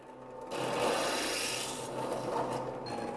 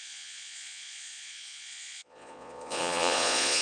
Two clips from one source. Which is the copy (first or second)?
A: second